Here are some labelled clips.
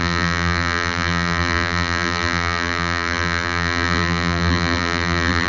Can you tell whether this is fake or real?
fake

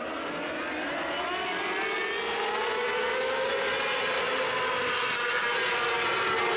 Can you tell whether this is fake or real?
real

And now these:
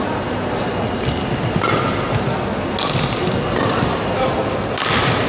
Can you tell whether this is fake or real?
real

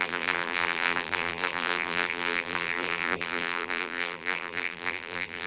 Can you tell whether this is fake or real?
fake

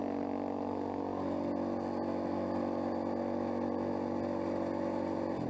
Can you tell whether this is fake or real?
real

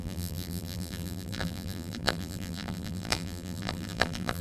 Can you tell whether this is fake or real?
fake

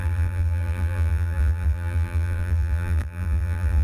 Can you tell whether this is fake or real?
fake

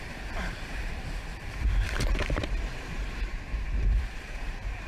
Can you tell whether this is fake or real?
fake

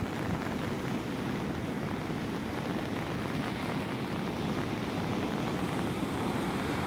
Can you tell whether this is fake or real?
real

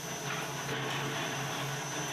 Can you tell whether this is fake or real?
real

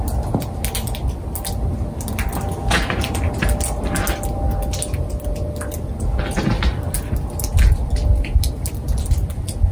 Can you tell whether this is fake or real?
real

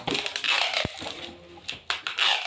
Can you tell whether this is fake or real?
real